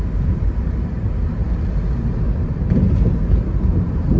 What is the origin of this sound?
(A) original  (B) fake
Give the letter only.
A